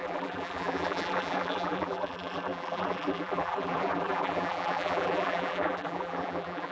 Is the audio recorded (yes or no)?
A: no